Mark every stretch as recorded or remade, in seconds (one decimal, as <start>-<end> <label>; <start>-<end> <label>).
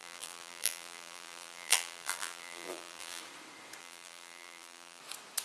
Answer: 0.0-3.2 remade; 3.2-3.8 recorded; 3.8-5.0 remade; 5.0-5.4 recorded